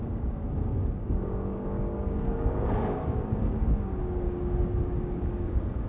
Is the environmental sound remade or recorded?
remade